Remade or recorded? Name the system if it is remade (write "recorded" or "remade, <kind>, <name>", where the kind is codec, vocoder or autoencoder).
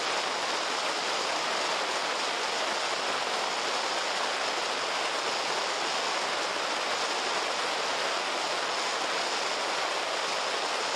recorded